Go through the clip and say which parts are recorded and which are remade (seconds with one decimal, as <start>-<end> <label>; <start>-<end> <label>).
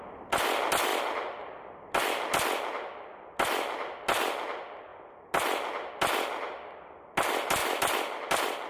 0.0-7.6 recorded; 7.6-8.7 remade